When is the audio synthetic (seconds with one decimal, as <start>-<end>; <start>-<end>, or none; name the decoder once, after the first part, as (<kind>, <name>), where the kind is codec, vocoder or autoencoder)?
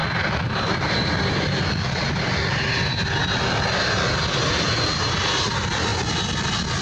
0.0-2.2 (vocoder, BigVGAN v2); 4.2-5.0